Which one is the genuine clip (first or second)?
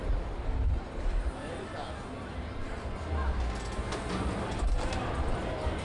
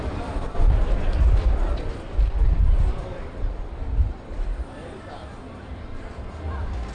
first